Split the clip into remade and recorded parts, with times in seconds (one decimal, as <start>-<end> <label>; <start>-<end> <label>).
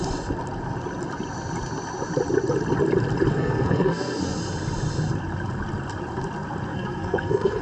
0.0-3.3 recorded; 3.3-4.4 remade; 4.4-6.7 recorded; 6.7-7.6 remade